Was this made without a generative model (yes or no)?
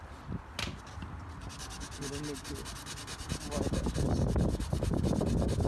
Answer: yes